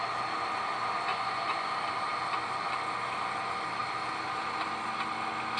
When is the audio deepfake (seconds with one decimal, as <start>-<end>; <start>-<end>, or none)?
1.1-1.7